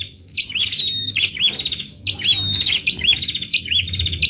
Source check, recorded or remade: remade